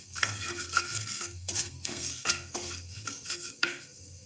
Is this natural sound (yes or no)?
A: no